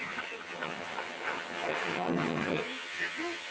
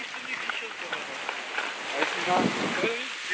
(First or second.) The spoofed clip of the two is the first